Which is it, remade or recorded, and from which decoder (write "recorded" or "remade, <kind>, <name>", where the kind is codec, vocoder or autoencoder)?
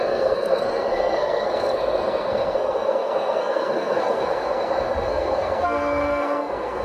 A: remade, codec, SNAC